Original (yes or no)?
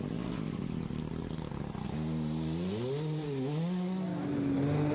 yes